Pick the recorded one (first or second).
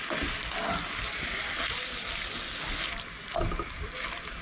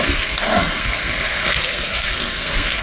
first